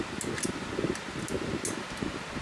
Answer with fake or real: real